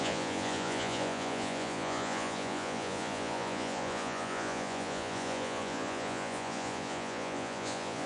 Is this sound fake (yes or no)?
yes